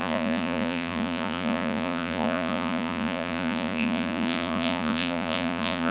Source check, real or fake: fake